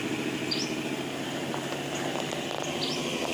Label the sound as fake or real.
real